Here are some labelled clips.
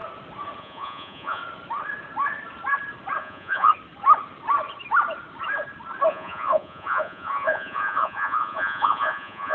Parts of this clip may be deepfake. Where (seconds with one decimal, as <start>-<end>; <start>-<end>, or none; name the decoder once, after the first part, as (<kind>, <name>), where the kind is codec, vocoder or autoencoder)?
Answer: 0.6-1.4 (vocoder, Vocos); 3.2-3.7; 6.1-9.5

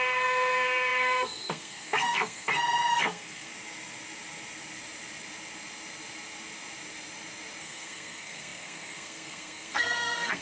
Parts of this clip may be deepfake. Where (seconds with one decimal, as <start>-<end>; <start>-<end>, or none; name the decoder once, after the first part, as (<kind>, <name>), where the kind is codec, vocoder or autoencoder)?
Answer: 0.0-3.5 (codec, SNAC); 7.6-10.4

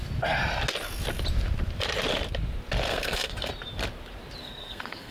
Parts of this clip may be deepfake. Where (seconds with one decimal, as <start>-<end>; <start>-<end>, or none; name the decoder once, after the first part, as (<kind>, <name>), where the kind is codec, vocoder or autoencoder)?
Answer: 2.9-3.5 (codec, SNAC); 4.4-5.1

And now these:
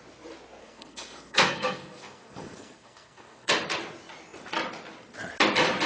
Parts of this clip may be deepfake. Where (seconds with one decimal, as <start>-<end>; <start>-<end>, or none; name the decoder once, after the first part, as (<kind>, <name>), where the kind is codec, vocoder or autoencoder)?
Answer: 0.6-3.5 (codec, SNAC)

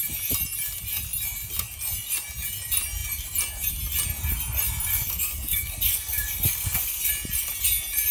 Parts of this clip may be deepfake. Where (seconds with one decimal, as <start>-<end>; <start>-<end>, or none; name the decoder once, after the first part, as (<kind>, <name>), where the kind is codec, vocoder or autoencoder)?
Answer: 4.9-7.1 (codec, SNAC)